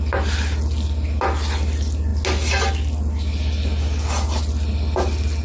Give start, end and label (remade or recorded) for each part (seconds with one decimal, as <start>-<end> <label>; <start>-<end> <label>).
0.0-5.4 recorded